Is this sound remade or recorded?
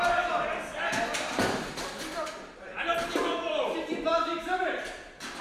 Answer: remade